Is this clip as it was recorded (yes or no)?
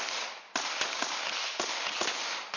yes